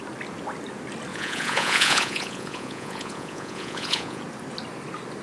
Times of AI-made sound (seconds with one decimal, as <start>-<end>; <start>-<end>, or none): 1.1-4.2